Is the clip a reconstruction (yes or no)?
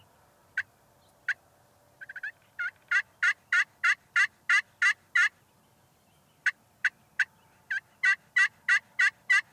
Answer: no